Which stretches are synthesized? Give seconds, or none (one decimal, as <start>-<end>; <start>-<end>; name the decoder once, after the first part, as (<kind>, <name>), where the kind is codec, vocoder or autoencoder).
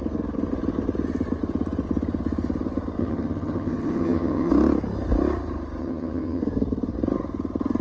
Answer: 3.0-4.5 (vocoder, HiFi-GAN); 5.8-6.4